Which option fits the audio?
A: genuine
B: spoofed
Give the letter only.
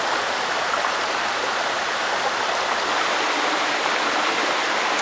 A